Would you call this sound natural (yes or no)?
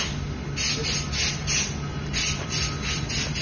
yes